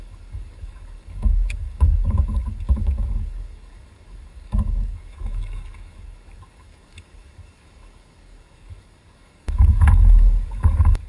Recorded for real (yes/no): no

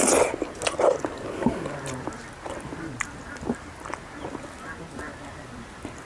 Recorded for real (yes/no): yes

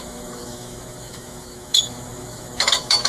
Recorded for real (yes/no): no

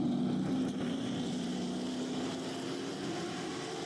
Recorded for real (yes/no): yes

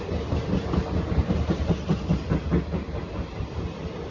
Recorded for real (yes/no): yes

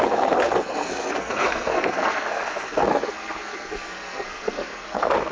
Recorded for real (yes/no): no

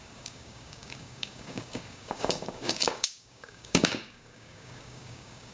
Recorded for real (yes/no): no